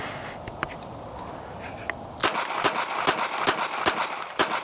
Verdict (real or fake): real